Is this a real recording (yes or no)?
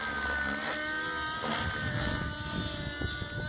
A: yes